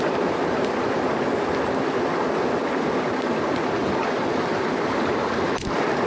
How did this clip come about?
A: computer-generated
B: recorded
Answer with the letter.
B